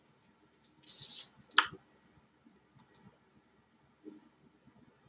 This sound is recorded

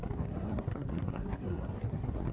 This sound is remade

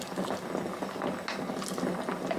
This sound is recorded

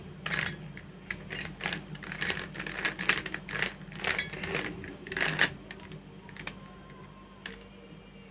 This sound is recorded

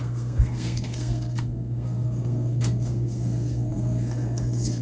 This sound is remade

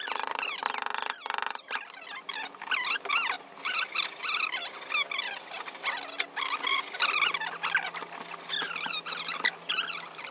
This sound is recorded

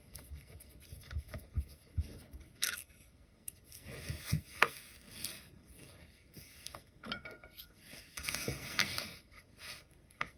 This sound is remade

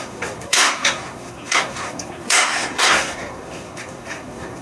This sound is remade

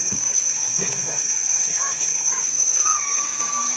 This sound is remade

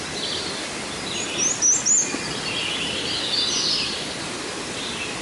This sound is recorded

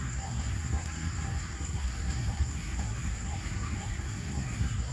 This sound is remade